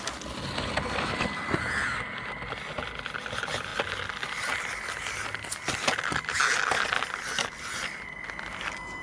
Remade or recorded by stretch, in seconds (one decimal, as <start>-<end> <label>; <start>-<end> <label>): 0.0-9.0 recorded